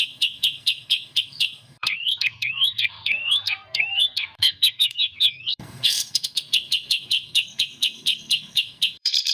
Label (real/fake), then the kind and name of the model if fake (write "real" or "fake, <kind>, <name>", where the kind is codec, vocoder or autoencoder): fake, codec, SNAC